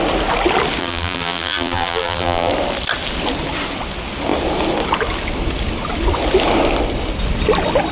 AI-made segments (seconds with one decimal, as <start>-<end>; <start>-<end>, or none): 0.8-2.5